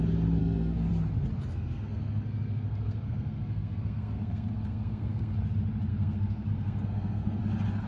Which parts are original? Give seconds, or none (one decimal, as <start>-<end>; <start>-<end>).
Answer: 0.0-0.4; 0.9-1.5; 5.3-5.9; 7.4-7.9

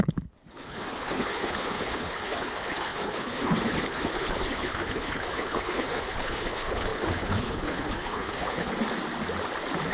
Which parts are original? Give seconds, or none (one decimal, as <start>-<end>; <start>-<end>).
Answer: 8.7-9.9

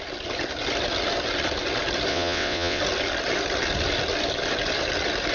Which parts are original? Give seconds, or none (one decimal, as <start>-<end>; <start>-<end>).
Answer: 0.0-2.1; 2.8-5.3

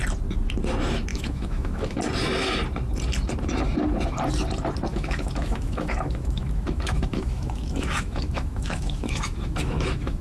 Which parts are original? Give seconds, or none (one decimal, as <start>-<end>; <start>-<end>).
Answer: 0.0-1.1; 2.0-4.9

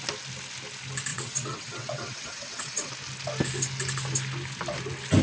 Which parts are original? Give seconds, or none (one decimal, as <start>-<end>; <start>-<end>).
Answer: 0.0-1.1; 2.9-5.2